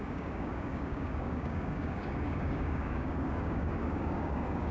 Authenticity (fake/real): fake